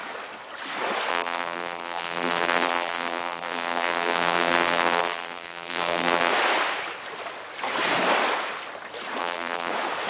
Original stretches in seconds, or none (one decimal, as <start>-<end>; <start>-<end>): 0.0-1.1; 6.3-9.2; 9.7-10.1

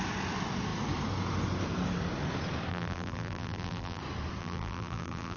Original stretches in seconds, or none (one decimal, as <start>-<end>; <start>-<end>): 0.0-2.7; 4.0-4.4

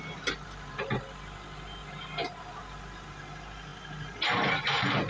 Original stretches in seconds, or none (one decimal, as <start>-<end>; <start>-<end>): 0.0-5.1

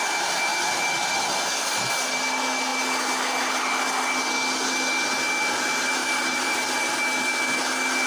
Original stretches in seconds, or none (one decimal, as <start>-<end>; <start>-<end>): 0.0-6.0; 6.9-8.1

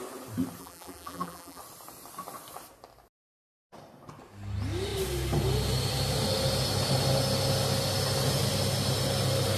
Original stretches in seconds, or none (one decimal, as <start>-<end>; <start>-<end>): 0.0-0.6; 1.6-9.6

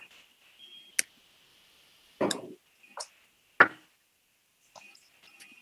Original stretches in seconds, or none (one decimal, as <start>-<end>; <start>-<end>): 0.0-1.5; 2.3-5.6

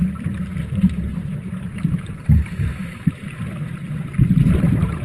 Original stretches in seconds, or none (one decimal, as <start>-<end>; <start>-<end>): 2.4-2.9; 3.5-4.4